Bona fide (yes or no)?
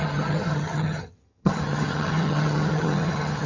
no